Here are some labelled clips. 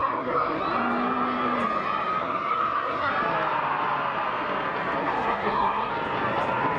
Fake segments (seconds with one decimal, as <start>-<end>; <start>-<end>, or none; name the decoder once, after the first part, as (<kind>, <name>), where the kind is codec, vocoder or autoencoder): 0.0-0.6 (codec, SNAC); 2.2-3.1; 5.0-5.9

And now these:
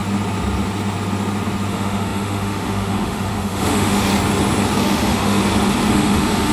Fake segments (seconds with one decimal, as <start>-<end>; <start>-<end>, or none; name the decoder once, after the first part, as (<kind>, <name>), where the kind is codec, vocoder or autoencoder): 1.7-4.1 (autoencoder, DAC-VAE); 4.8-5.4; 5.9-6.5

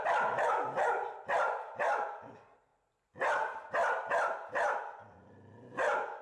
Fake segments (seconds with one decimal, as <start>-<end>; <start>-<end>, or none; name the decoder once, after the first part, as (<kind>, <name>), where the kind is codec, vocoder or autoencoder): none